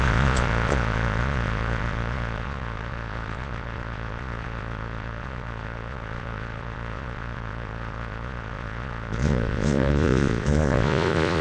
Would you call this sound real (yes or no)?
no